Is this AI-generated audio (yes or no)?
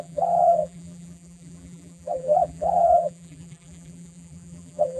yes